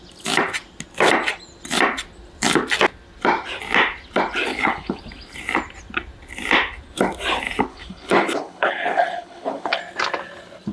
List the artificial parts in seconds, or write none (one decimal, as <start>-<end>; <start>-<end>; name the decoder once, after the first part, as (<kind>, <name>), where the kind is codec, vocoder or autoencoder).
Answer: 4.5-5.0 (codec, HILCodec); 7.7-9.8